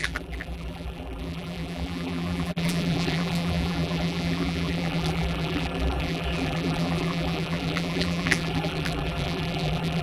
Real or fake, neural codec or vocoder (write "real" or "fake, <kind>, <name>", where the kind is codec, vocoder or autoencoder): fake, vocoder, BigVGAN v2